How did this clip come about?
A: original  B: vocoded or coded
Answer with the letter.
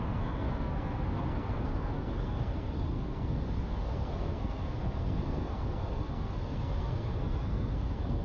B